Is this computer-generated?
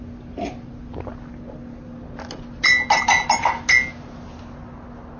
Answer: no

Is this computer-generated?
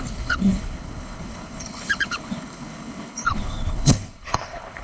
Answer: yes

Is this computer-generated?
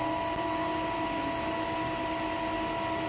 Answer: no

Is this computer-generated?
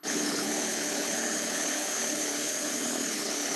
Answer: yes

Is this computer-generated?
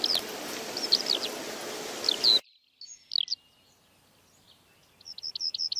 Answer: no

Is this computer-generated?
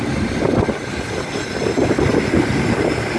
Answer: no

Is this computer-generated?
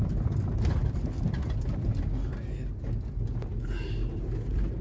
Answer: no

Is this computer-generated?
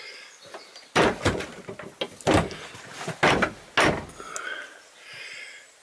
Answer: no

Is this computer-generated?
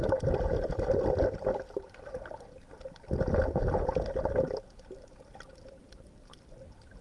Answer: no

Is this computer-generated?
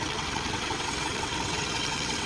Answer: yes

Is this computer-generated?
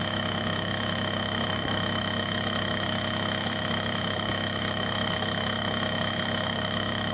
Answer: yes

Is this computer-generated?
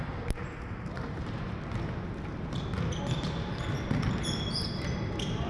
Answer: no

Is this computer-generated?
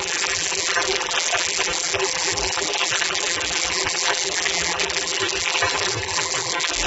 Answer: yes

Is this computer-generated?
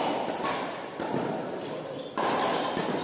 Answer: no